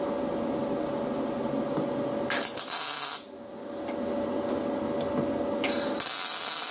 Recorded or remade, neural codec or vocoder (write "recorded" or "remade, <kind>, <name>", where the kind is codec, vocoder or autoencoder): recorded